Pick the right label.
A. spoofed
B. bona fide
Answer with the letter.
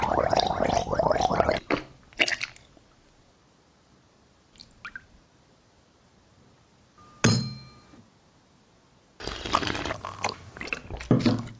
B